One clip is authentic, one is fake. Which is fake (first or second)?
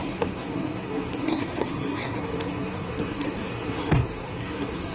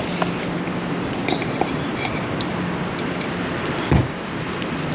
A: first